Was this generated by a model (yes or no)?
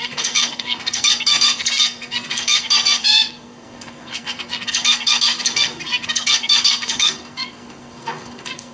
yes